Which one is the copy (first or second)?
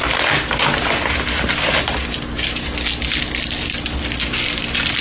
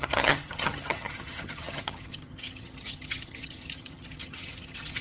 second